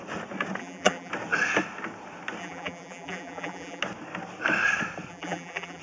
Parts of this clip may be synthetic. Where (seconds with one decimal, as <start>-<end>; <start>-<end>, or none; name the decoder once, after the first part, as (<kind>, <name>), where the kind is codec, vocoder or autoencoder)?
0.6-1.1 (vocoder, BigVGAN v2); 2.4-3.8; 5.1-5.8